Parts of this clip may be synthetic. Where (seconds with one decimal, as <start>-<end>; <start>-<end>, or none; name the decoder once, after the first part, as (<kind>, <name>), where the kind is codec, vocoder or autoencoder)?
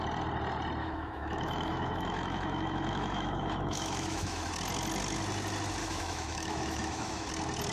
0.8-4.5 (autoencoder, DAC-VAE); 5.8-7.3